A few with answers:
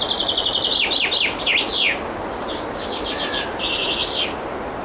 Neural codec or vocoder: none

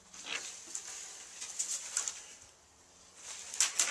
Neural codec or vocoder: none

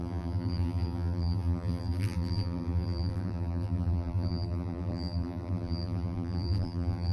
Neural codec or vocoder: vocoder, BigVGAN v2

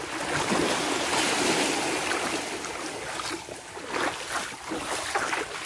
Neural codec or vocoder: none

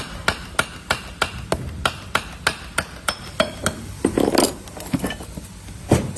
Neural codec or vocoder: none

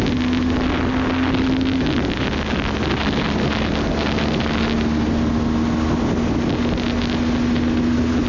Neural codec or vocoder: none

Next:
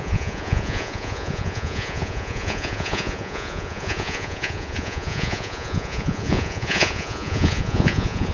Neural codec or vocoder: vocoder, Vocos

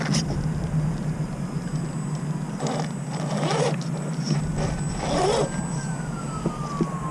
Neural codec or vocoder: none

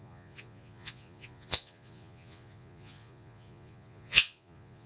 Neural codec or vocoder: vocoder, Vocos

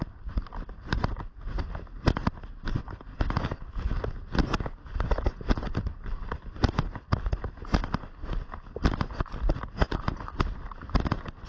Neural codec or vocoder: none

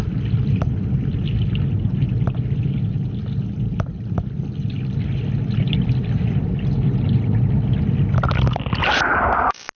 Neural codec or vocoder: none